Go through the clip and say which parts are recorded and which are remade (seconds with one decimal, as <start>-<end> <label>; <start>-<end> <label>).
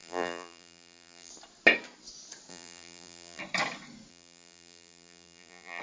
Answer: 0.0-1.3 remade; 1.3-2.5 recorded; 2.5-3.4 remade; 3.4-4.1 recorded; 4.1-5.8 remade